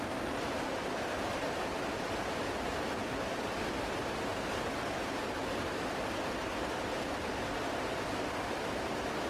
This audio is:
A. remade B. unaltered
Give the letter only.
B